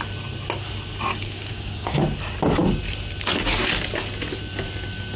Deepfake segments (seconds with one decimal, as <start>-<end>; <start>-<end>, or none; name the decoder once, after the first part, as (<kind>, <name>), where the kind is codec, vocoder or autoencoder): 1.1-2.0 (codec, DAC)